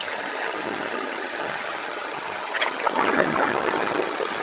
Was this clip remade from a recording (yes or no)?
yes